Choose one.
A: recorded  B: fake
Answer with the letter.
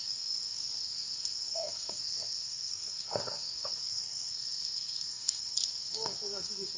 B